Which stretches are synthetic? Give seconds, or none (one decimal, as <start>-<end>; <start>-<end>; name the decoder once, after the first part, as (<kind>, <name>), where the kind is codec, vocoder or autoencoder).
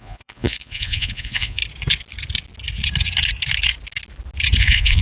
0.0-1.6 (vocoder, Vocos); 4.6-5.0